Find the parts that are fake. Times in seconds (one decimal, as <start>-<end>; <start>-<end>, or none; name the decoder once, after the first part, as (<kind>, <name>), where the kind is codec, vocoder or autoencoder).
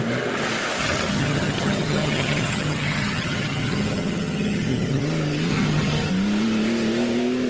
0.8-5.0 (vocoder, HiFi-GAN); 5.5-6.1